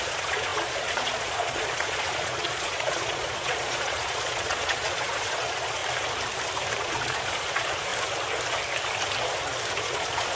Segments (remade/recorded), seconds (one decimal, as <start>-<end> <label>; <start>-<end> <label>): 0.0-5.8 remade; 5.8-6.8 recorded; 6.8-7.9 remade; 7.9-9.8 recorded; 9.8-10.4 remade